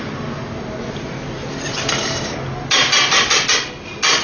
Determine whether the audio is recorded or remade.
recorded